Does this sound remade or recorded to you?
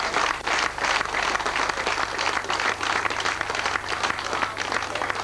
recorded